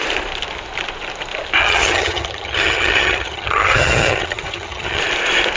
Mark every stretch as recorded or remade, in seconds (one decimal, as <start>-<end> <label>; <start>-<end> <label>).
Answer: 0.0-1.6 recorded; 1.6-5.0 remade; 5.0-5.6 recorded